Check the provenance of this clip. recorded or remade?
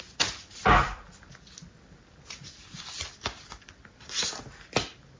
recorded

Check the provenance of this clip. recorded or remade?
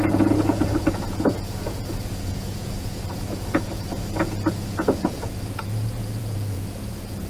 remade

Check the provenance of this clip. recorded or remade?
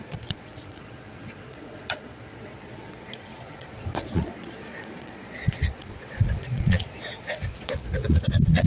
remade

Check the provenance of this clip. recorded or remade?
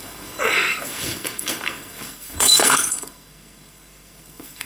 remade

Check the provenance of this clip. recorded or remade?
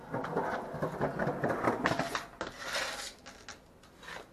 recorded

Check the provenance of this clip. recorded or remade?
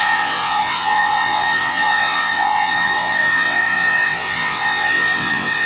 remade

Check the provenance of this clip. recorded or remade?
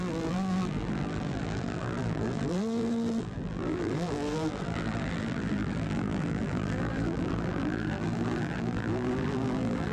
remade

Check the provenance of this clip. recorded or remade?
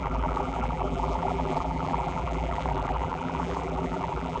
remade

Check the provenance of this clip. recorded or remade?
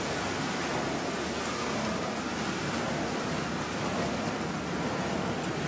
recorded